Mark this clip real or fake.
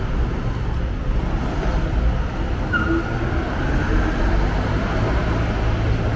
real